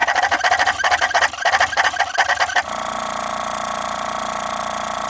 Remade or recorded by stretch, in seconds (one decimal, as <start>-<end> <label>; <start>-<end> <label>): 0.0-5.1 recorded